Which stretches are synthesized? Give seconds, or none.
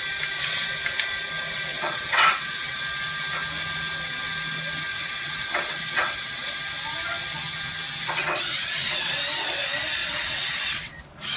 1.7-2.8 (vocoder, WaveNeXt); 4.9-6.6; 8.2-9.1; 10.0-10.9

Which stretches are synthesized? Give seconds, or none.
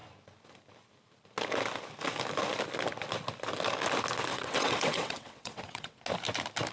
4.3-6.0 (vocoder, WaveNeXt)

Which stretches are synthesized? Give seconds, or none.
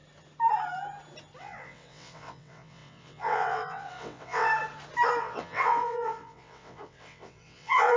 1.4-4.5 (vocoder, WaveNeXt); 5.2-8.0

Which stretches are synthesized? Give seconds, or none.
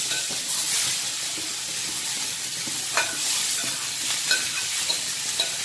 none